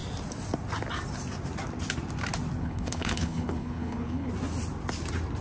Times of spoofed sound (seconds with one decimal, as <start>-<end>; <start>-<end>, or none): 2.6-4.3